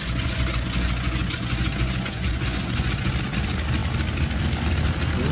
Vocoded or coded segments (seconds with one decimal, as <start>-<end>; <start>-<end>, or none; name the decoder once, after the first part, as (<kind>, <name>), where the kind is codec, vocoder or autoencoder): 0.0-3.1 (vocoder, Vocos)